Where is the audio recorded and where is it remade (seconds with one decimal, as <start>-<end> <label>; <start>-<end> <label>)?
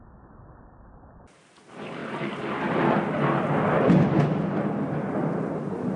0.0-2.0 remade; 2.0-5.6 recorded; 5.6-6.0 remade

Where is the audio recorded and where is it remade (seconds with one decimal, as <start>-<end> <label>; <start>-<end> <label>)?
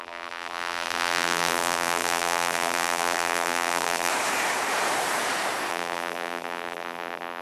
0.0-4.1 remade; 4.1-5.7 recorded; 5.7-7.4 remade